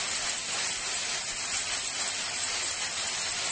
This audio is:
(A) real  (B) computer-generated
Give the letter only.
A